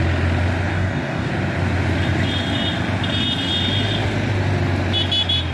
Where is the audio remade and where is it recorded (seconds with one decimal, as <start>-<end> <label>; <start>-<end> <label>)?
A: 0.0-0.7 recorded; 0.7-1.3 remade; 1.3-5.5 recorded